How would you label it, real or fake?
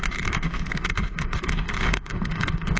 fake